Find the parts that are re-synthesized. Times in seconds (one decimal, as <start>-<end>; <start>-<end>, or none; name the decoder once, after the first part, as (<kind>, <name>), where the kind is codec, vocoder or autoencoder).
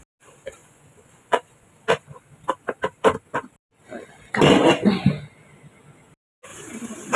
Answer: 0.6-1.7 (vocoder, Vocos)